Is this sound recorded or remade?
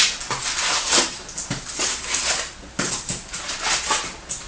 recorded